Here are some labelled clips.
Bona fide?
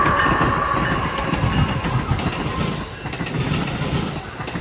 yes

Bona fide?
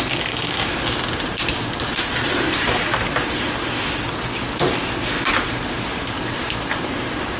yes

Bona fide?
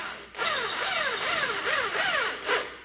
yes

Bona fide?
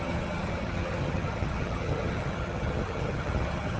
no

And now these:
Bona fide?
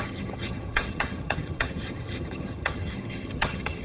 no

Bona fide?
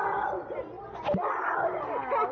yes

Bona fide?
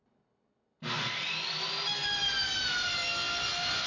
yes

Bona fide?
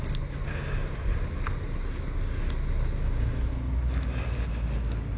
yes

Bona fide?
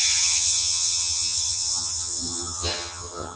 no